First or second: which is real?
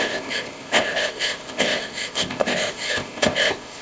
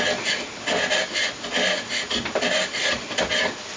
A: second